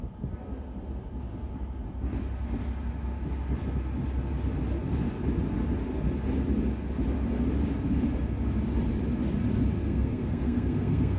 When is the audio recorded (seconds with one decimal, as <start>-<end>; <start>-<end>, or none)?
0.0-9.8